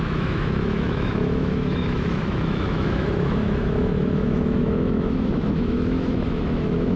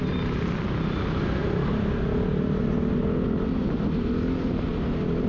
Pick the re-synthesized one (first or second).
first